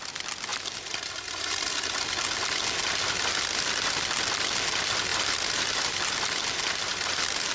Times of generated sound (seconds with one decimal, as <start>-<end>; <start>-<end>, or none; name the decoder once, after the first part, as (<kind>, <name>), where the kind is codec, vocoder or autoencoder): 0.5-1.6 (vocoder, BigVGAN v2); 5.1-6.1; 6.9-7.5